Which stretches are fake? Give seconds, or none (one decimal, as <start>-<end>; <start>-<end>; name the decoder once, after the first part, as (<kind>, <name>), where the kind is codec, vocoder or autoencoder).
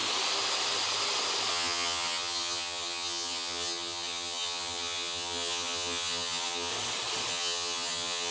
1.5-6.7 (vocoder, HiFi-GAN); 7.3-8.3